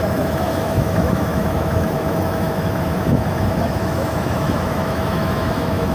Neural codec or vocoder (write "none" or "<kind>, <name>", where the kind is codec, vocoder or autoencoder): autoencoder, DAC-VAE